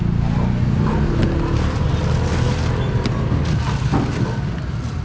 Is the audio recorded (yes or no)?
yes